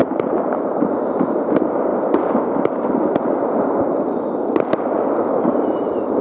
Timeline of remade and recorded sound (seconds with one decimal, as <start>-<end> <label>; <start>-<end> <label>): 0.0-0.9 remade; 0.9-6.2 recorded